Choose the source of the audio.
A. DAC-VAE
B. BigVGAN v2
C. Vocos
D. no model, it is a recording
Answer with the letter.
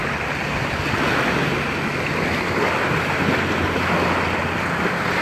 D